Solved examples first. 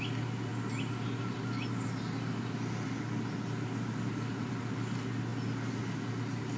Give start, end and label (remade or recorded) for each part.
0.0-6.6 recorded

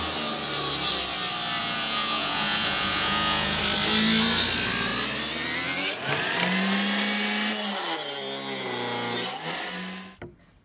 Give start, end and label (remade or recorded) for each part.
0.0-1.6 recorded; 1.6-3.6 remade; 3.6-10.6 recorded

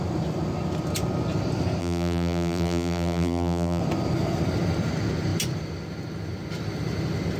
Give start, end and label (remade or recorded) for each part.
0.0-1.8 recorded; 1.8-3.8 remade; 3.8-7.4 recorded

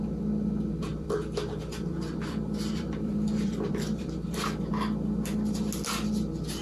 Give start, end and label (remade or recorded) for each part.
0.0-0.9 recorded; 0.9-4.7 remade; 4.7-6.6 recorded

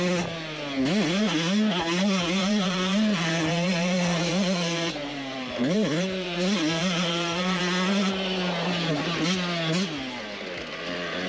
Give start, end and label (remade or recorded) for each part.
0.0-2.4 recorded; 2.4-7.6 remade; 7.6-11.3 recorded

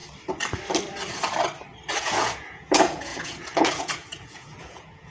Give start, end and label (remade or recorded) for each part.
0.0-2.0 recorded; 2.0-5.1 remade

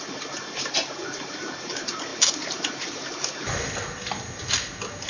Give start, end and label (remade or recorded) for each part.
0.0-5.1 recorded

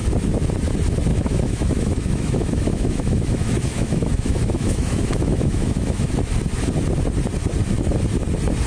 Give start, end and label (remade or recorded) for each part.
0.0-1.1 recorded; 1.1-6.1 remade; 6.1-8.7 recorded